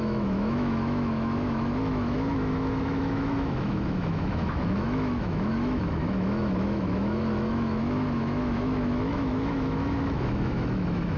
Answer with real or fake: fake